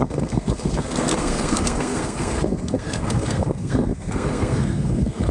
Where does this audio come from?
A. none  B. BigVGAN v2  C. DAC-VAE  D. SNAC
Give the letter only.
D